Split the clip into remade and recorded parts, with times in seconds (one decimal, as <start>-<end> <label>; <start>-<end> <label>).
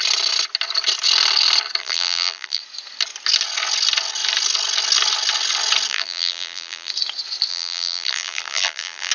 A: 0.0-1.8 recorded; 1.8-2.6 remade; 2.6-5.9 recorded; 5.9-6.9 remade; 6.9-7.5 recorded; 7.5-9.1 remade